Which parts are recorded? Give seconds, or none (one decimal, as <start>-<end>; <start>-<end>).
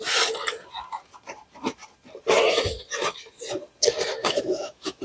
0.0-4.2